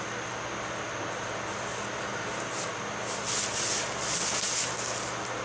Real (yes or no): yes